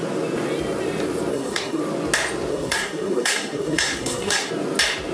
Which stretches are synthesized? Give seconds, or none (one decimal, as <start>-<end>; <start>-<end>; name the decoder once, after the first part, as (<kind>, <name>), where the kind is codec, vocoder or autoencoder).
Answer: 1.3-1.8 (codec, SNAC); 2.5-4.5